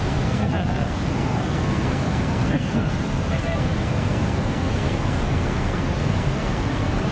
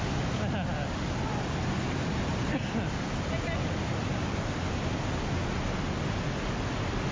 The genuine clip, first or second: second